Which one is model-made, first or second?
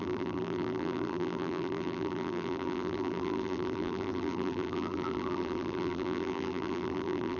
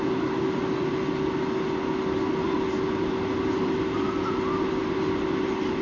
first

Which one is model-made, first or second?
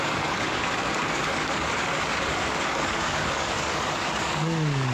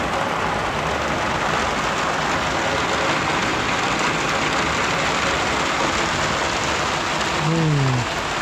first